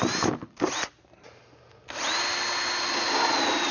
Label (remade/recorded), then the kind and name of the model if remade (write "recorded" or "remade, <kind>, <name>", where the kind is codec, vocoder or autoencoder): recorded